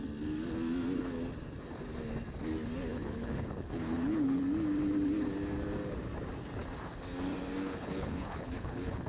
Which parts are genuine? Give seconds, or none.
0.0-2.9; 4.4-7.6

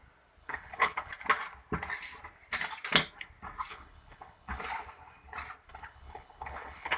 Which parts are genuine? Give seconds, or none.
0.0-0.4; 1.1-3.7; 4.6-5.7